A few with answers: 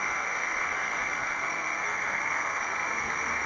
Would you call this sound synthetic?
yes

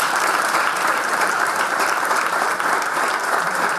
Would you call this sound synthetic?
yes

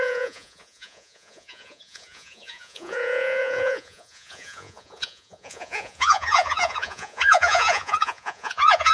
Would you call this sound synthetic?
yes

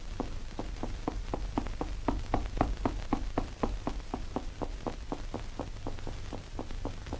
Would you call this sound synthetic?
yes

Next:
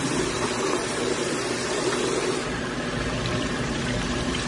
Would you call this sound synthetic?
yes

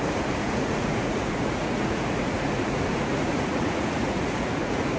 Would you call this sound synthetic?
yes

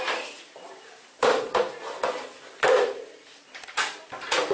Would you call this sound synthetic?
yes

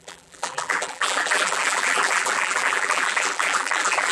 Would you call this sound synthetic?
yes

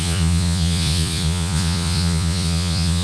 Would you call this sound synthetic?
yes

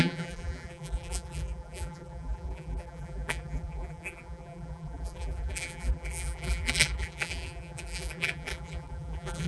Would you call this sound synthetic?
yes